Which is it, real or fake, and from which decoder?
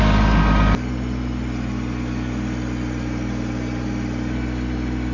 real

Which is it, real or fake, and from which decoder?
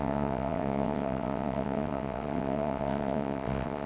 fake, vocoder, WaveNeXt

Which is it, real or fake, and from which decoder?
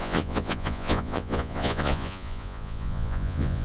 fake, vocoder, Vocos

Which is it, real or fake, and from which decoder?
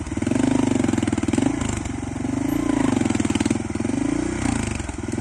real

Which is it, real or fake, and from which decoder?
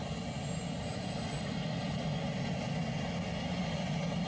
real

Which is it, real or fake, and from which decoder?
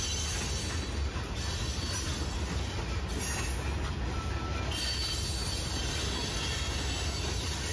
real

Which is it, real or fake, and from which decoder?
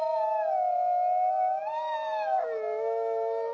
real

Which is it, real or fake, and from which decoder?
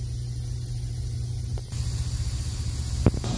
real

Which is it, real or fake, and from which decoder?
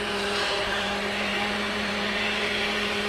fake, vocoder, BigVGAN v2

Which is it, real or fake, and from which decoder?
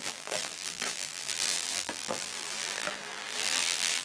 fake, vocoder, BigVGAN v2